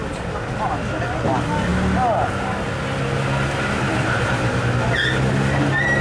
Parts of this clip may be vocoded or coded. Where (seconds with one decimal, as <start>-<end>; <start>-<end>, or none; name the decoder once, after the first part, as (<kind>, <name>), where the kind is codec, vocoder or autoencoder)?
none